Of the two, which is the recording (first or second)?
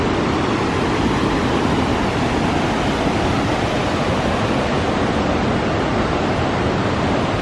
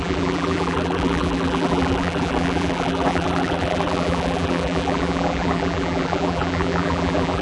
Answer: first